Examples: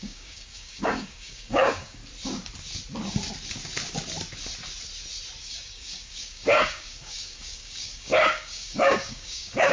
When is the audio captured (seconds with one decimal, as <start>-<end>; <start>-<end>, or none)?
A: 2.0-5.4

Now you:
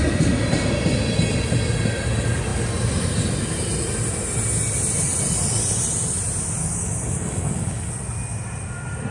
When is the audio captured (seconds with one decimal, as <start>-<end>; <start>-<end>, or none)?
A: 0.0-6.6; 7.9-9.1

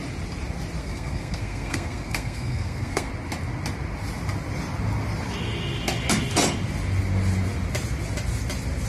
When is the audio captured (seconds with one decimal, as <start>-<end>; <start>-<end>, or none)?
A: 0.0-0.8; 3.1-8.9